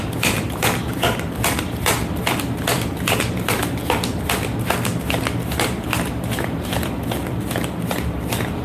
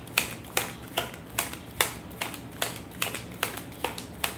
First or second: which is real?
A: second